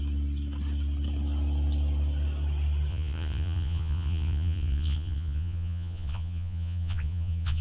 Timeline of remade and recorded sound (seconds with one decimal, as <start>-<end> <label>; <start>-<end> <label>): 0.0-2.9 recorded; 2.9-7.6 remade